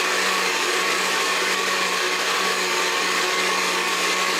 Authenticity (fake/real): fake